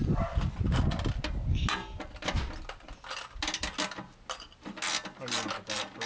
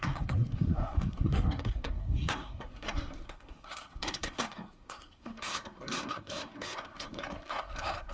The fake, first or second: second